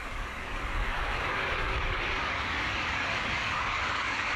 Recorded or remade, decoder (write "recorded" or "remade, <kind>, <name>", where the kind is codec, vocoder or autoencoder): remade, codec, DAC